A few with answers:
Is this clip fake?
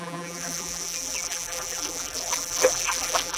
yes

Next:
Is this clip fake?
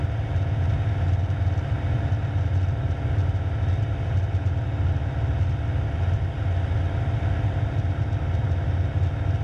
no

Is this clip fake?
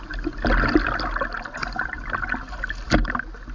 no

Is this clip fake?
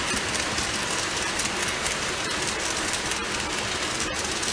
no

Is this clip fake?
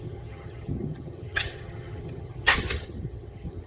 yes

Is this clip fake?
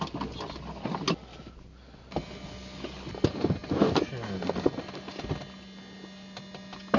no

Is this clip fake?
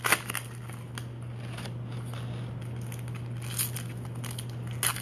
no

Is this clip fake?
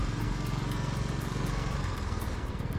yes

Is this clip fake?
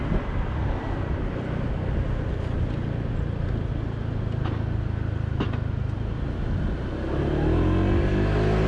no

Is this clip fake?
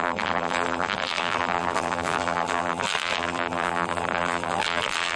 yes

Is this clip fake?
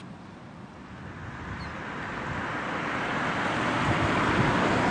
yes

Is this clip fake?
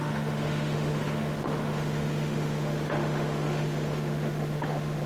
yes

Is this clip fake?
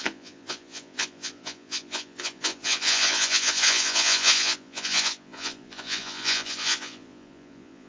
yes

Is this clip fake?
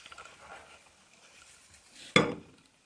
no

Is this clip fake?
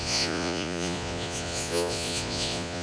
yes